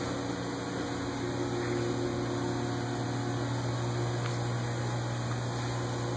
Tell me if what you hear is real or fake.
real